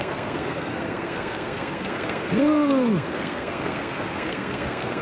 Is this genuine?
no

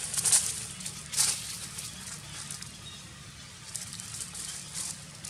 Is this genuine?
yes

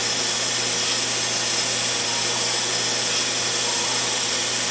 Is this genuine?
yes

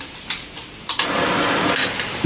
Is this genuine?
yes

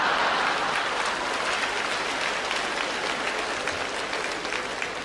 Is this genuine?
yes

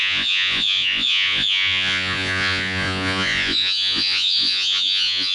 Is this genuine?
no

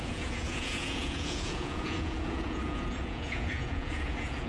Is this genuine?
no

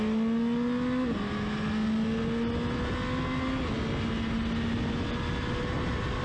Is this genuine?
yes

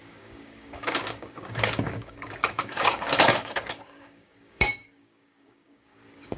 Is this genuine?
no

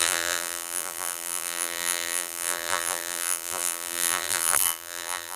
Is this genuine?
no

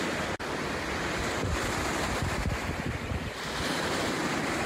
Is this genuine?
yes